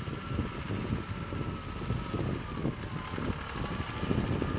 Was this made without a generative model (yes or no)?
yes